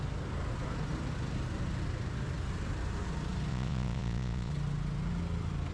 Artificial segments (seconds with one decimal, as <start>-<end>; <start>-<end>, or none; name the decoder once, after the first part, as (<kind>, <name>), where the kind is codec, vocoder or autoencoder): 3.5-4.5 (vocoder, Vocos)